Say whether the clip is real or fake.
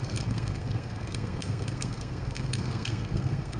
fake